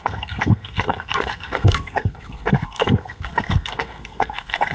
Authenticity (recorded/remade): remade